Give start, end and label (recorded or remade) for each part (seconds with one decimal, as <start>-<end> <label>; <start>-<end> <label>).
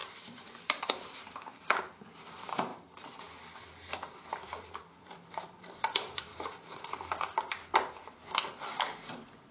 0.0-2.7 remade; 2.7-4.3 recorded; 4.3-6.3 remade; 6.3-8.8 recorded; 8.8-9.5 remade